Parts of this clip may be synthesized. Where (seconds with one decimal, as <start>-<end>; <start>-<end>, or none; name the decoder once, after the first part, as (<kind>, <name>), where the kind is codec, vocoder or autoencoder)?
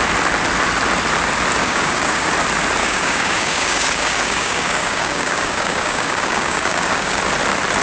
1.6-2.3 (codec, DAC); 2.8-7.2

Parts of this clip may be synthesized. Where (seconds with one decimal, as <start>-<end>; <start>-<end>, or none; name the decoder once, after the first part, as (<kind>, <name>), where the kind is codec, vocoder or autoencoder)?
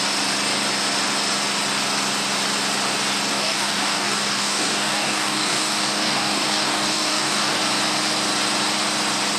3.3-7.6 (codec, DAC)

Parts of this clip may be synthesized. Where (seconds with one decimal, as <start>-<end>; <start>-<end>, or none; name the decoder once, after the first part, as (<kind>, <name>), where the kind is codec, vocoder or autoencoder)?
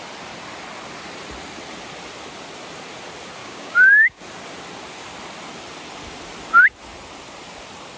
3.4-4.2 (codec, DAC)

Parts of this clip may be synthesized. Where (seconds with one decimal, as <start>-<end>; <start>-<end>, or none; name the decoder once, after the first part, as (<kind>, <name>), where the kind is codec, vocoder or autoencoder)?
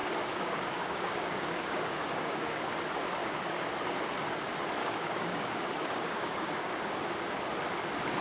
0.0-2.7 (codec, DAC); 3.2-3.7; 4.8-7.1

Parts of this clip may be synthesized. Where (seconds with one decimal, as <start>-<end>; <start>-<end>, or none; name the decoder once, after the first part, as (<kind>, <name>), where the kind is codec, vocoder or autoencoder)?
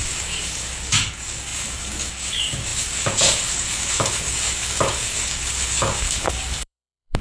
0.0-7.2 (codec, DAC)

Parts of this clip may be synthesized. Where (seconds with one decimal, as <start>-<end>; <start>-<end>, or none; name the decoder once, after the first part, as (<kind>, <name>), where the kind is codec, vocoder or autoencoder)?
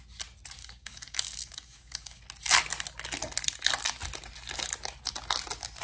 0.6-2.2 (codec, DAC)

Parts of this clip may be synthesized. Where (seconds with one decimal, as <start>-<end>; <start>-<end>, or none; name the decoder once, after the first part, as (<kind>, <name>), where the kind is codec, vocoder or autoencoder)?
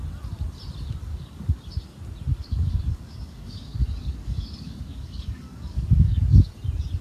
1.1-1.6 (codec, DAC); 2.3-6.5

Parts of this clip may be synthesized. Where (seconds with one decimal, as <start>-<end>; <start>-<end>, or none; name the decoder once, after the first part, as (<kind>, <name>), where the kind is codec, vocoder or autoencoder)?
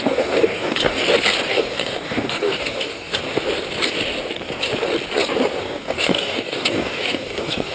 0.0-1.0 (codec, DAC); 1.5-3.2; 5.6-7.7